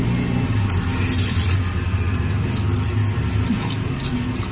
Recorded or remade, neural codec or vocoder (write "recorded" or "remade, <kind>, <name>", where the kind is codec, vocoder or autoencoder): recorded